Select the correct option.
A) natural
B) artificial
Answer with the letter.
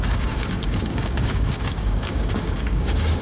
B